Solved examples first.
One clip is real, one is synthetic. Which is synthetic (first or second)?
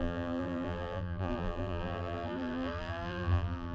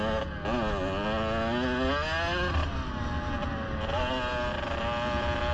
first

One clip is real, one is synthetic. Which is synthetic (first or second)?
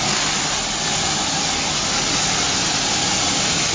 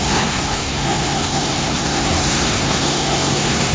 second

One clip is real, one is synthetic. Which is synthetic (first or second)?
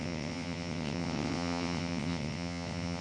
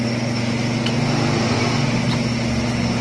first